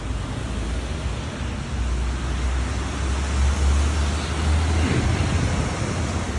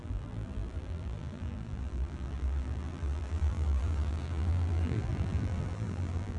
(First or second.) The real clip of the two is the first